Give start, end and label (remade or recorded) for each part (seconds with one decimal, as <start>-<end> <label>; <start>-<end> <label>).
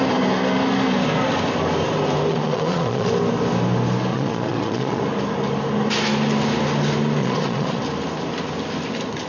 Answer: 0.0-2.3 recorded; 2.3-3.1 remade; 3.1-4.1 recorded; 4.1-5.0 remade; 5.0-7.2 recorded; 7.2-7.8 remade; 7.8-9.3 recorded